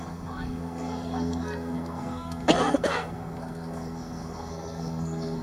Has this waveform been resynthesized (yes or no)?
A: yes